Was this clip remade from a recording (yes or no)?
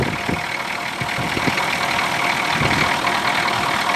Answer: no